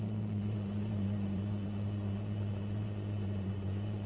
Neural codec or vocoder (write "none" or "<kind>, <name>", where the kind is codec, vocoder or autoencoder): vocoder, Vocos